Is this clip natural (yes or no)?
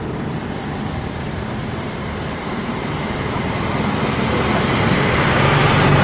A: no